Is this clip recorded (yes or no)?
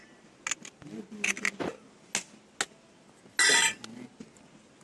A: yes